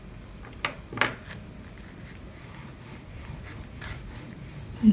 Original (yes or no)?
yes